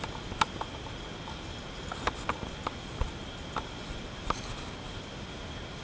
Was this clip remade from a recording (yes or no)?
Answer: no